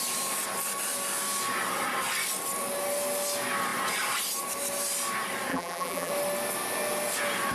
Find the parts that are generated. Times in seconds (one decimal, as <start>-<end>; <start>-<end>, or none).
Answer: 5.5-6.1